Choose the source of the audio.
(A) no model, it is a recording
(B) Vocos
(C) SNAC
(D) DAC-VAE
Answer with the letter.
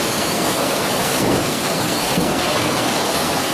C